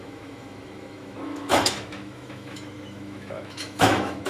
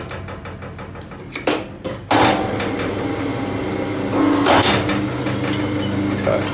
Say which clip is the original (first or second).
second